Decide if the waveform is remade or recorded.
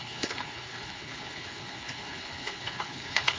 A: remade